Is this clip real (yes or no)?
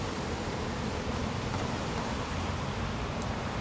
no